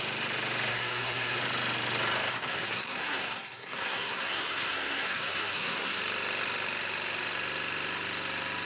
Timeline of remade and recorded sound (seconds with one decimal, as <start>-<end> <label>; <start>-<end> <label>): 0.0-0.7 recorded; 0.7-1.4 remade; 1.4-2.3 recorded; 2.3-6.0 remade; 6.0-8.7 recorded